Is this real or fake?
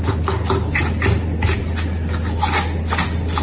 real